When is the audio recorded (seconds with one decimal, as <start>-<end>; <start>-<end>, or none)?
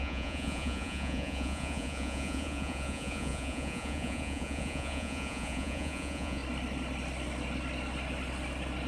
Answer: 6.4-8.9